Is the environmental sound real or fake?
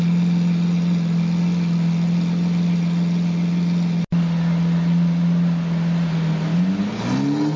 real